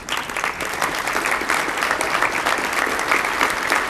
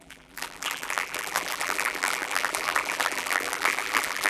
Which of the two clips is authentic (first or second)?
first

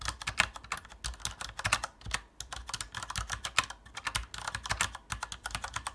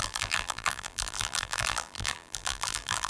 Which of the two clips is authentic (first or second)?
first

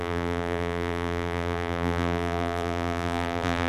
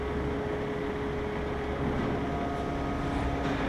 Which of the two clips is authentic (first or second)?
second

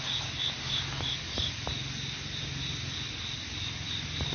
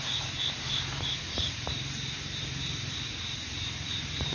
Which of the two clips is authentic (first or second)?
first